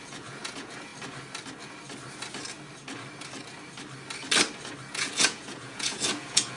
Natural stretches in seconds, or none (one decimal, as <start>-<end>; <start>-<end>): 0.9-4.9

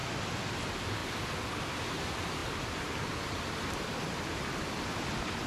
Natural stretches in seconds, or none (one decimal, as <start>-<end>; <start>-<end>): 0.6-2.4; 4.9-5.5

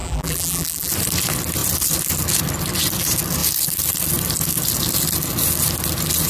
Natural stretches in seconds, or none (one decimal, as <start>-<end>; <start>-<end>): 0.9-6.3

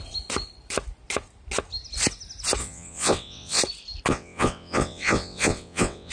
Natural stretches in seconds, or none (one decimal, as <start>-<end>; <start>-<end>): 0.0-2.6; 3.6-4.1